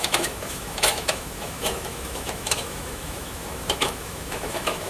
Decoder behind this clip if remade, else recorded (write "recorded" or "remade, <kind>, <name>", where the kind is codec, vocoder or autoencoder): remade, autoencoder, DAC-VAE